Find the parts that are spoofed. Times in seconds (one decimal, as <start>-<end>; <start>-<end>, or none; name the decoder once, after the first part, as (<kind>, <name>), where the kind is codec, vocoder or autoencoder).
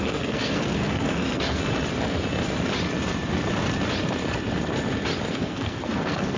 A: 0.0-1.6 (codec, SNAC); 5.3-6.4